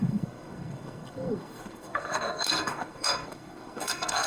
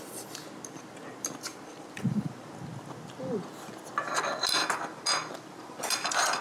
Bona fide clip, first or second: second